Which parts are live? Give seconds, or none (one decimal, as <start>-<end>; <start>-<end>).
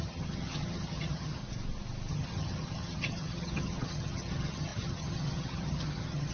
1.4-2.1